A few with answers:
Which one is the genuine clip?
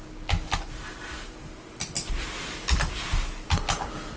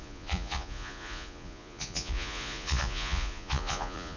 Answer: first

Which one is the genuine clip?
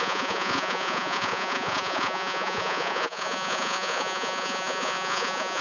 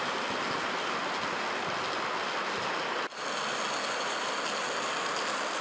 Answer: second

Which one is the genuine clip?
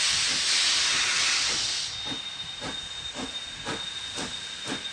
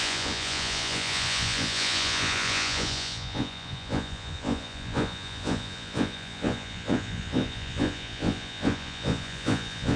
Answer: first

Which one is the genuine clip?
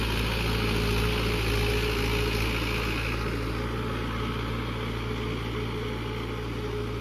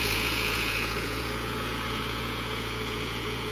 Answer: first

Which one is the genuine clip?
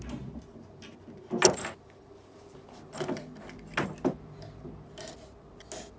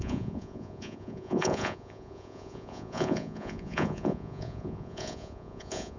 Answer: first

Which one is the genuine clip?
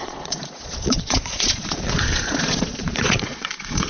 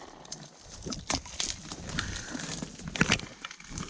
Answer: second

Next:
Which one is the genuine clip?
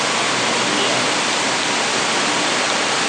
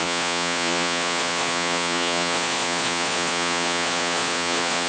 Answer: first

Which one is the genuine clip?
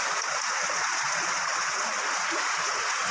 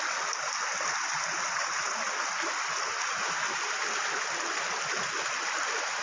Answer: second